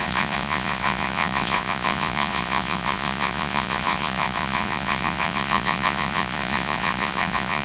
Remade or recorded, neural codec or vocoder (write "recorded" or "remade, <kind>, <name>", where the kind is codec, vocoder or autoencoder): remade, vocoder, Vocos